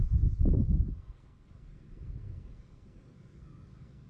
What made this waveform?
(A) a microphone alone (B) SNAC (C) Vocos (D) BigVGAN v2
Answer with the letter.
B